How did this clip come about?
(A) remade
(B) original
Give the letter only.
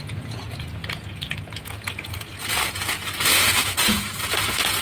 A